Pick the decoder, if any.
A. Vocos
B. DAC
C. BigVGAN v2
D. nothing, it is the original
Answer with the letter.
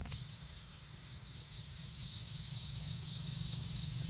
B